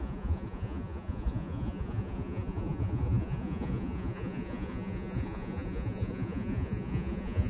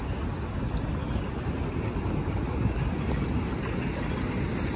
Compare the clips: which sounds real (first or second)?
second